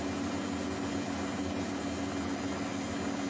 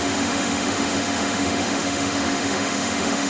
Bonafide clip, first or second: first